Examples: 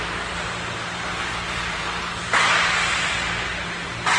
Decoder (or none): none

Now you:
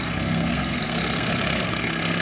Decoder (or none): codec, SNAC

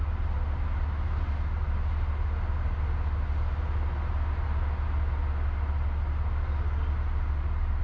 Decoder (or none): none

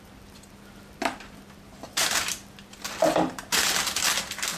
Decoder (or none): none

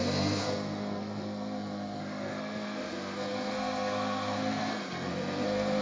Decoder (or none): codec, SNAC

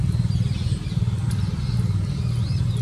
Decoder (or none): none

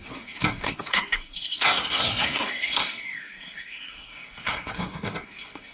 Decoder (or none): codec, SNAC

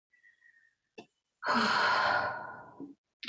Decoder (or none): none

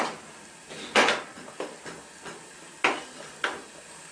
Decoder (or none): none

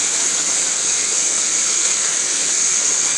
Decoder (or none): codec, SNAC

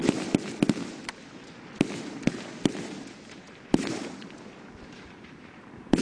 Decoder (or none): none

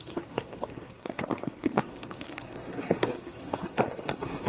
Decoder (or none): codec, SNAC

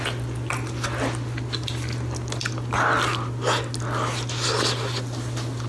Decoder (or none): none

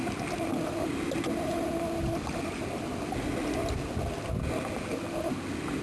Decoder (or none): none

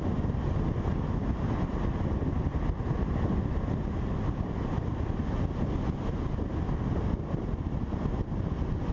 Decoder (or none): none